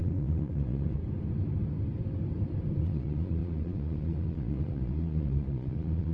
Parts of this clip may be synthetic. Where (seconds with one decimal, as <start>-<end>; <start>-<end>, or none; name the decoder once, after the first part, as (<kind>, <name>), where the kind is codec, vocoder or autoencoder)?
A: 0.0-1.0 (vocoder, Vocos); 2.8-6.1